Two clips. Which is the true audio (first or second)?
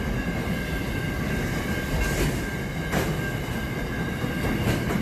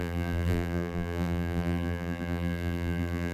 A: first